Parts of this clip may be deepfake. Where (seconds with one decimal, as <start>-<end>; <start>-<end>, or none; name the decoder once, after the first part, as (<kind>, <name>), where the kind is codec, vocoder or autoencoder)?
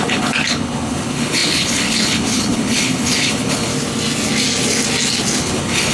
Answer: 0.0-3.7 (codec, HILCodec); 5.4-5.9